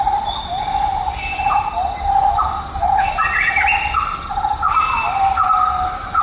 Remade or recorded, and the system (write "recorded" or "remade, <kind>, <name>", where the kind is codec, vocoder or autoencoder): recorded